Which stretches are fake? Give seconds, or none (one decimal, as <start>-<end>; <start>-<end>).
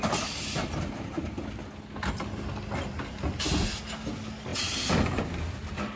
none